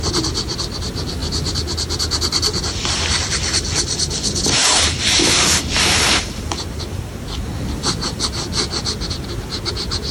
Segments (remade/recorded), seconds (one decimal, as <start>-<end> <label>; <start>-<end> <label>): 0.0-10.1 recorded